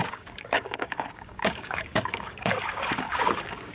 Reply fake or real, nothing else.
fake